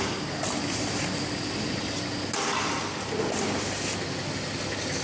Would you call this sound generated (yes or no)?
no